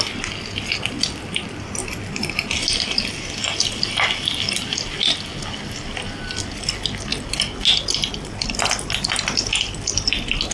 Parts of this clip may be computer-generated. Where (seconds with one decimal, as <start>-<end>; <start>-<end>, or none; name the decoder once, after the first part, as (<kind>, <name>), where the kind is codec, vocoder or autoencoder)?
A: none